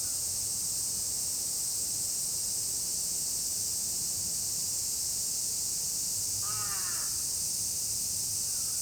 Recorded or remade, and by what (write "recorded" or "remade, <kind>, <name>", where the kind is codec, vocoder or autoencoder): recorded